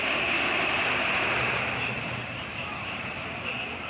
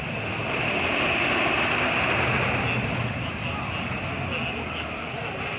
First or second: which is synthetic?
first